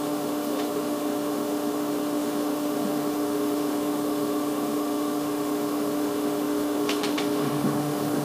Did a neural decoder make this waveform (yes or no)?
yes